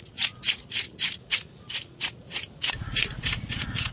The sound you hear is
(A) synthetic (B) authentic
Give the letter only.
A